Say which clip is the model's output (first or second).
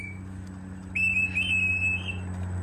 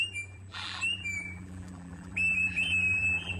second